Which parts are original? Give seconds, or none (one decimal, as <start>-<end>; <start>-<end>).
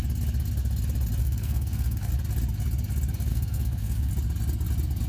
0.0-1.2; 2.1-3.3; 4.1-5.1